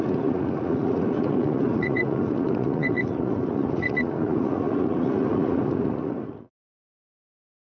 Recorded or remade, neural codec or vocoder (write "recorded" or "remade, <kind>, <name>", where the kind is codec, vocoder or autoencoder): remade, vocoder, Vocos